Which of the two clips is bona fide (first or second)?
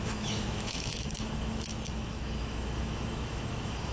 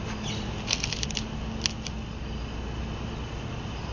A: second